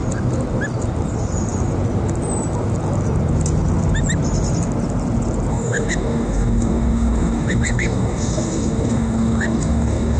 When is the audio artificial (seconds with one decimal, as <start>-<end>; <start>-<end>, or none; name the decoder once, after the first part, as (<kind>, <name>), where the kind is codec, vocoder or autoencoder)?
5.5-10.2 (codec, DAC)